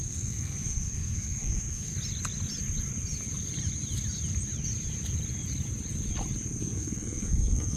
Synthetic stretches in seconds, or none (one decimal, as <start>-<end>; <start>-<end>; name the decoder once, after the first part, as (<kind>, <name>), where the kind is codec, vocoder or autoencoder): 0.0-1.9 (codec, SNAC); 6.6-7.8